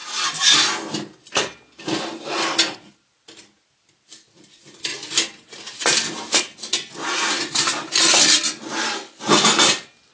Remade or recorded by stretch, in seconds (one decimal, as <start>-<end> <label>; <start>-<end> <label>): 0.0-10.1 recorded